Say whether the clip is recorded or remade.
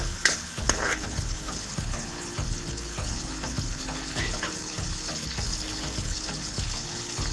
remade